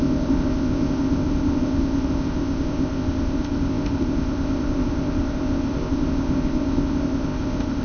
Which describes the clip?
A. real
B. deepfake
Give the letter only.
B